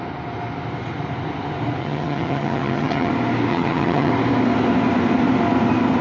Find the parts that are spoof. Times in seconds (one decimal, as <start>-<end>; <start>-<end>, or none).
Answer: 1.8-3.1; 3.5-4.1